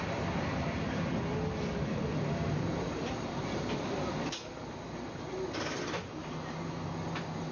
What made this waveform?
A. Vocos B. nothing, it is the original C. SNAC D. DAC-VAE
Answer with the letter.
B